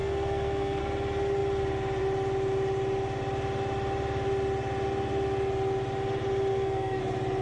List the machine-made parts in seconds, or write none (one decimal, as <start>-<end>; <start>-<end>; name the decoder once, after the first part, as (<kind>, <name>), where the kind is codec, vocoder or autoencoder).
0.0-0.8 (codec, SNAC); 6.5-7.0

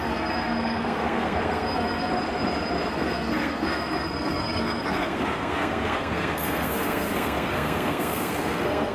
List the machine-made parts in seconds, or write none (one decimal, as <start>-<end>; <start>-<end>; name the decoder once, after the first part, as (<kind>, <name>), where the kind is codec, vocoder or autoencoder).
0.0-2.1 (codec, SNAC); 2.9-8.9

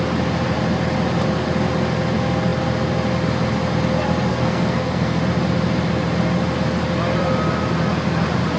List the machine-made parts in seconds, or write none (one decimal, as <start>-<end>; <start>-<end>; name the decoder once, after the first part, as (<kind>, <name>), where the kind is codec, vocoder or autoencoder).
4.3-5.2 (codec, SNAC)